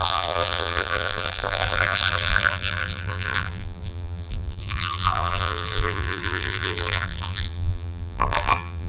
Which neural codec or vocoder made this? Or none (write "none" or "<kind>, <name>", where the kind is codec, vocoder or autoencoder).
vocoder, BigVGAN v2